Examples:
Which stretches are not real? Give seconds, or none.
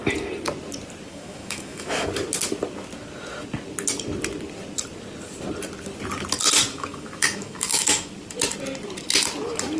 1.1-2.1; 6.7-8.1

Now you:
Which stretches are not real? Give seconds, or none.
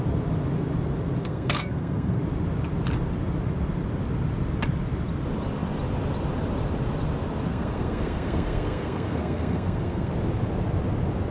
1.2-2.2; 7.5-10.1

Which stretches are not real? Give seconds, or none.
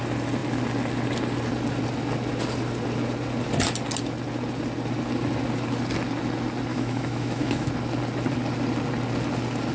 6.7-7.7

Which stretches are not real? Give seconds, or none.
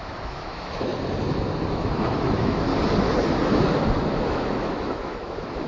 0.0-0.9; 1.7-2.7; 4.1-5.7